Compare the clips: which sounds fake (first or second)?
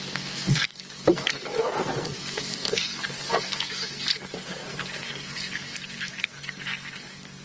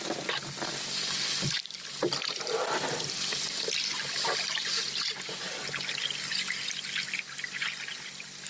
first